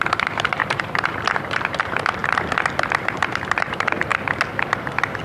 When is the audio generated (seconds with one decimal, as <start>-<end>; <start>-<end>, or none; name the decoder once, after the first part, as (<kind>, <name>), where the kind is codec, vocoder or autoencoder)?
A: 0.0-2.2 (vocoder, BigVGAN v2); 3.0-4.1